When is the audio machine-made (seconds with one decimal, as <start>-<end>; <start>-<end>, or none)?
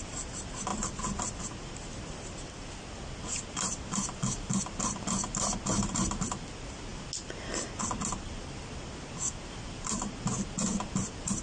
none